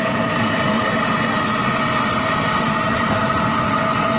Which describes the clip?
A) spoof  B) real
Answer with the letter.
B